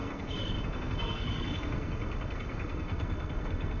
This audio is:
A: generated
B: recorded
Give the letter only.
A